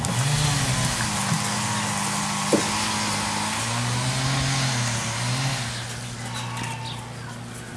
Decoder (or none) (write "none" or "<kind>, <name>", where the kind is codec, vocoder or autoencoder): none